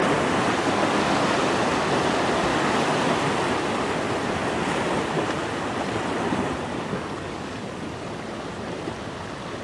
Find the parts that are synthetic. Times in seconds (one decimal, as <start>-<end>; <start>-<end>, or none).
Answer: 0.8-1.3; 2.5-3.0; 6.7-8.0